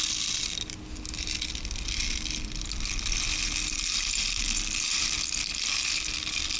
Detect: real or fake real